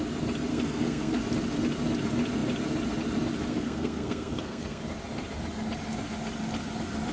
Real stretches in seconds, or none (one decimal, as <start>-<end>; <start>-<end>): 0.0-0.5; 1.2-3.5; 4.8-7.1